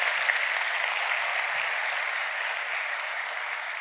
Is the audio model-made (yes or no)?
no